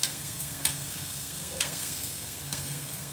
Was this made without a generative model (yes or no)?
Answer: no